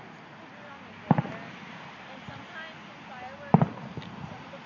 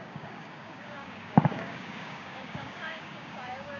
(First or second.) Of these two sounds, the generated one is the second